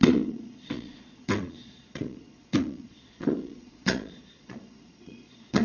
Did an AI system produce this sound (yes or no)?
yes